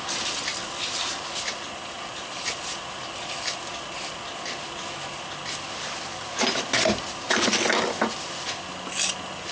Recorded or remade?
recorded